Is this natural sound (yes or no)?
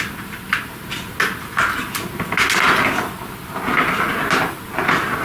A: yes